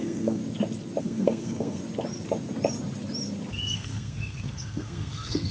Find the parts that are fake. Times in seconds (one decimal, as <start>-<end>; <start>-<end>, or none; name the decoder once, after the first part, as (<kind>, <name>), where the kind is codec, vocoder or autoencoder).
0.0-0.4 (codec, SNAC); 1.0-1.8; 3.5-5.5